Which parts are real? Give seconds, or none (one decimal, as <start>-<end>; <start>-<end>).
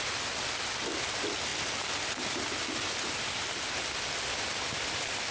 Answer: 0.0-5.3